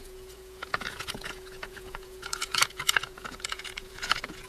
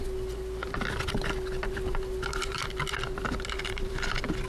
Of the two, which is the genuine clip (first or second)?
second